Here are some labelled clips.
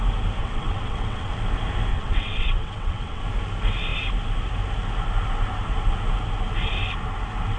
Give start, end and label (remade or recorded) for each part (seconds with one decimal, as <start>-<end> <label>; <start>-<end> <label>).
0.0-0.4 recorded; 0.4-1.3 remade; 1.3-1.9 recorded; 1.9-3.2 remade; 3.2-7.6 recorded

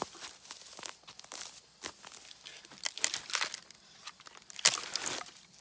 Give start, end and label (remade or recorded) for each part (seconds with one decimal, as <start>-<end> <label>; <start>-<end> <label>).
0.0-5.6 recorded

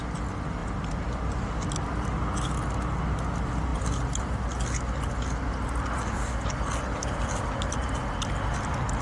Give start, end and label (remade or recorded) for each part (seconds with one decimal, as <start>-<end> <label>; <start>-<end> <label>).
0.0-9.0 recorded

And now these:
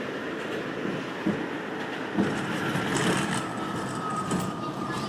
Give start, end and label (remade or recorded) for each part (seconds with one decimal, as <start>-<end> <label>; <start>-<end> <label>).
0.0-4.1 recorded; 4.1-5.1 remade

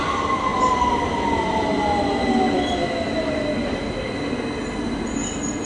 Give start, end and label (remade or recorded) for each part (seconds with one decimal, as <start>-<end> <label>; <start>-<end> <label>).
0.0-5.7 recorded

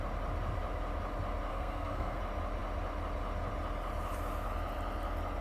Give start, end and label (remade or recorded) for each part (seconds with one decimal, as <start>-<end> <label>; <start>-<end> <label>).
0.0-1.5 recorded; 1.5-2.2 remade; 2.2-5.4 recorded

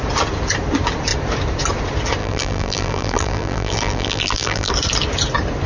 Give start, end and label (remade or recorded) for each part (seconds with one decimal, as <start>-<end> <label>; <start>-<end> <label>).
0.0-2.2 recorded; 2.2-4.7 remade; 4.7-5.7 recorded